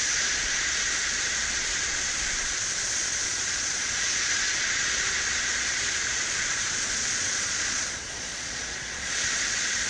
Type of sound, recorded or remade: remade